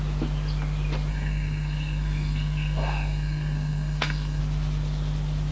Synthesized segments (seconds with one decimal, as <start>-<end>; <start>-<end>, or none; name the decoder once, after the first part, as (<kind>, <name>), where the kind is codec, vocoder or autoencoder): 1.1-4.4 (codec, SNAC)